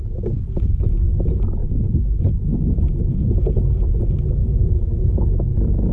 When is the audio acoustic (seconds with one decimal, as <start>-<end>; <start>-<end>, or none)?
0.0-4.4; 5.2-5.9